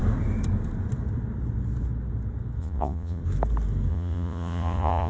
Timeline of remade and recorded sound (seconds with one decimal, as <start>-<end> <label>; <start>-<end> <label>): 0.0-2.6 recorded; 2.6-3.2 remade; 3.2-3.9 recorded; 3.9-5.1 remade